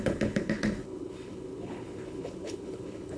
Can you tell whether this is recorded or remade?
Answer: remade